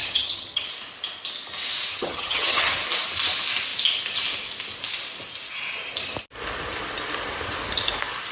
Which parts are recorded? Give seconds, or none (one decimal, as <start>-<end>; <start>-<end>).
0.7-1.9; 2.8-8.3